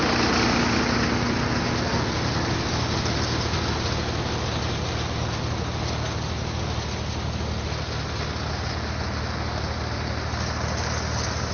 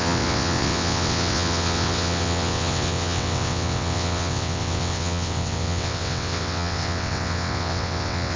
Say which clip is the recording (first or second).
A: first